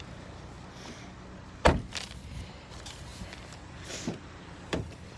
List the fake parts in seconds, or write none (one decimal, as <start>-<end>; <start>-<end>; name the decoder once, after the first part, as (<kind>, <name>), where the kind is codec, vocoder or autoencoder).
none